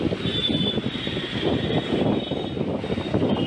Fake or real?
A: real